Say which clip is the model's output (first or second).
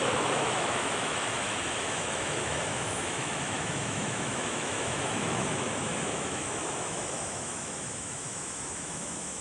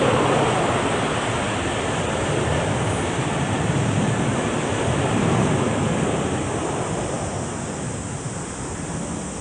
first